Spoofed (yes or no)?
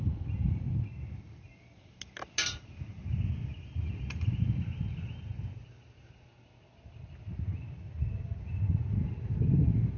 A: no